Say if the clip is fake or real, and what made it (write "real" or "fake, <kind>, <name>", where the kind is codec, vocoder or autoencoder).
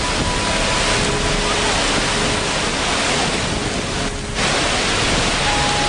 real